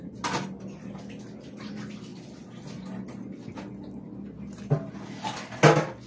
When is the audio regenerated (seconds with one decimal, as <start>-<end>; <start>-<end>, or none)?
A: none